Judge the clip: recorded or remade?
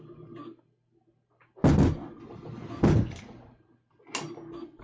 recorded